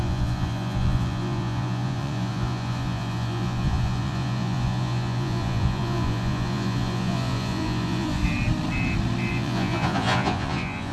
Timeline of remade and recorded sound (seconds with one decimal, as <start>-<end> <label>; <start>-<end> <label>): 0.0-8.2 remade; 8.2-9.3 recorded; 9.3-10.9 remade